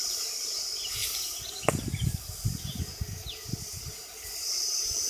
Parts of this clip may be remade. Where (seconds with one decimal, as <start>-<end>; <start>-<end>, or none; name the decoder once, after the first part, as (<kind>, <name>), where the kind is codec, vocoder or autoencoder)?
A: none